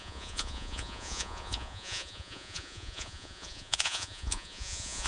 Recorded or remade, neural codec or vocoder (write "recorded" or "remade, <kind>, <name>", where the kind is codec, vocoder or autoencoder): remade, vocoder, Vocos